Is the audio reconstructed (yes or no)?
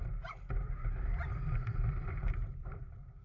yes